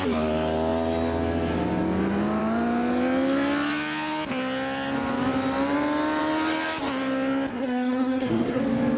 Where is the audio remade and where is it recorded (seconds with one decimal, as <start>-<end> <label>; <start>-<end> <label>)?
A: 0.0-7.5 recorded; 7.5-8.6 remade; 8.6-9.0 recorded